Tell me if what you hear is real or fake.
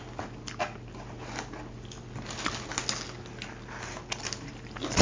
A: real